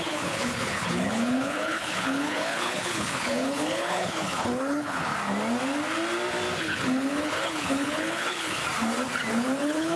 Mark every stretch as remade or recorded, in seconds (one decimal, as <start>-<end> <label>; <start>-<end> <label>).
0.0-5.1 remade; 5.1-6.6 recorded; 6.6-8.6 remade; 8.6-9.3 recorded; 9.3-10.0 remade